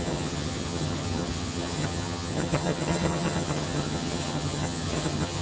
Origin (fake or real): fake